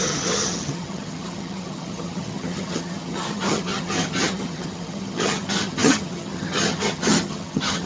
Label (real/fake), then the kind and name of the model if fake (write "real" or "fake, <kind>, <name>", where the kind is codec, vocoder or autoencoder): fake, vocoder, HiFi-GAN